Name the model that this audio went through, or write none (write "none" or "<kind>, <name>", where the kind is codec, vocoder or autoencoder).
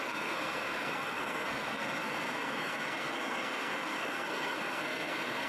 codec, SNAC